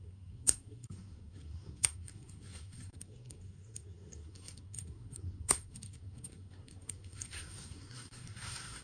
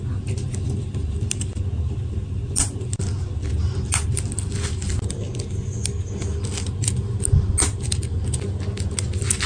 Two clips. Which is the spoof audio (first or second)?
first